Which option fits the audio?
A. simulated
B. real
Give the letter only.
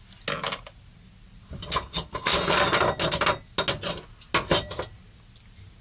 B